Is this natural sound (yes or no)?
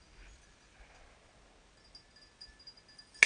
yes